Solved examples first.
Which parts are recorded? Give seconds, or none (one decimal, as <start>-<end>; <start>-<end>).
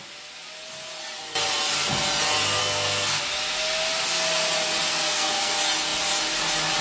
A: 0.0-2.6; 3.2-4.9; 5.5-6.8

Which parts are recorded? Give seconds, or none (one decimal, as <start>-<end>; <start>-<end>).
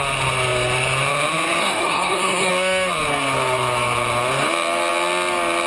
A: 0.0-1.6; 2.5-5.7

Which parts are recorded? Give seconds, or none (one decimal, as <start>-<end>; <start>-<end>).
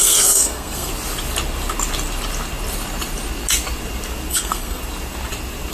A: 0.9-4.3; 4.8-5.7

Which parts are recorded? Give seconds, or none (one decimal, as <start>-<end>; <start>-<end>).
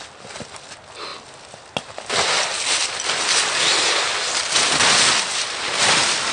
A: 0.0-6.3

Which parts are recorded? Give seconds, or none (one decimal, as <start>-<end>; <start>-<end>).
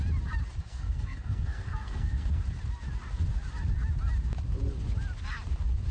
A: 0.0-0.6; 2.4-5.9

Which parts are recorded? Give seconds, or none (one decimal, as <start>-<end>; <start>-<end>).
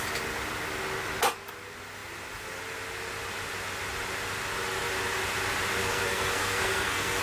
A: 0.0-5.8